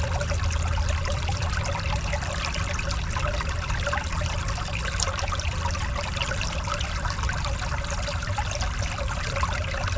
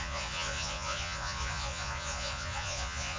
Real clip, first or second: first